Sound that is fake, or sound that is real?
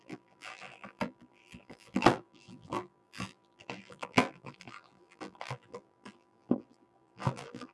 fake